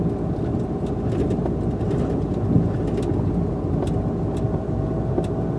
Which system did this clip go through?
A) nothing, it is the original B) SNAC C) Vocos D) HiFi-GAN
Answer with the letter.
A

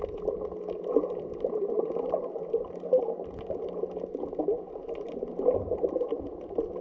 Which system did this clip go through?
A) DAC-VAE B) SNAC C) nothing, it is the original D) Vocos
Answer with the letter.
C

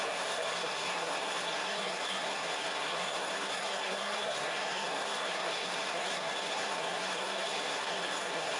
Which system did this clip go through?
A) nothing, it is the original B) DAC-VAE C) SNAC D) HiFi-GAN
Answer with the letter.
C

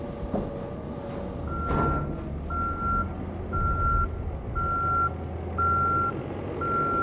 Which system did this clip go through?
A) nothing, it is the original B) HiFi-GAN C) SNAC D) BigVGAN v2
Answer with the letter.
A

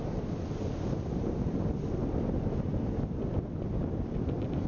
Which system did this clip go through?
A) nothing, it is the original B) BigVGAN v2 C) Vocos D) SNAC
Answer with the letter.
A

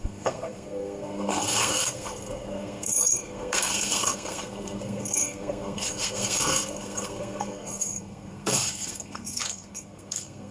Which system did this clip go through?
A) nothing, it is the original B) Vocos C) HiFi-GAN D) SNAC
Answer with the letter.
D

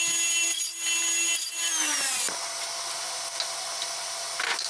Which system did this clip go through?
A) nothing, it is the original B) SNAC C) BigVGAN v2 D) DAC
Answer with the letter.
A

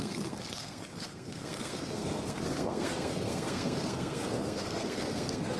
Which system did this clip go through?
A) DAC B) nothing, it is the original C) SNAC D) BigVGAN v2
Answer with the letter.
C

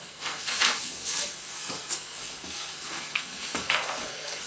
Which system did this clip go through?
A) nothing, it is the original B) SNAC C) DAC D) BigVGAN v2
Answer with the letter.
B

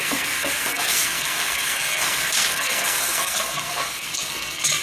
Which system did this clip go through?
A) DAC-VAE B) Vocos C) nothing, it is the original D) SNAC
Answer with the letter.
D